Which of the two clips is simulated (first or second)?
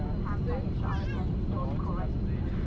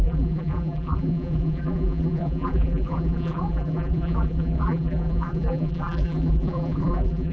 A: second